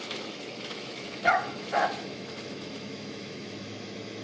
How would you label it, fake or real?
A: fake